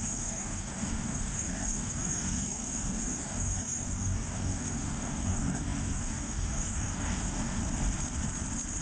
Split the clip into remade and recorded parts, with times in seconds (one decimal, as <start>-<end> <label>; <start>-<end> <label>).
0.0-7.6 remade; 7.6-8.8 recorded